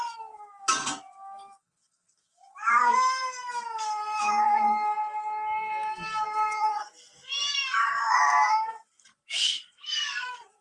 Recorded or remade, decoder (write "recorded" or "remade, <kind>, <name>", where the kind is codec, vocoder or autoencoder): remade, codec, DAC